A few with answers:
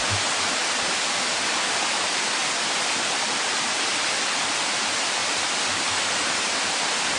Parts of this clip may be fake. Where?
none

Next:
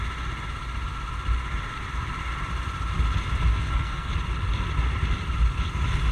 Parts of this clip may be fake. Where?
3.5-4.1 (codec, SNAC)

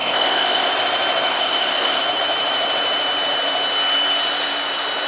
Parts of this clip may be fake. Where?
0.0-0.7 (codec, ZipCodec); 1.3-2.0

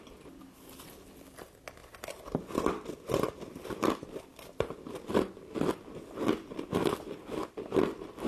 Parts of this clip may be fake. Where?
none

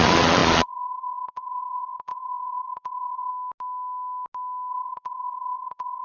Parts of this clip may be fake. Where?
0.0-3.3 (vocoder, Vocos); 4.7-6.0

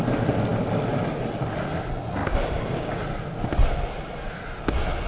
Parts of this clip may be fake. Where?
2.2-3.0 (codec, DAC)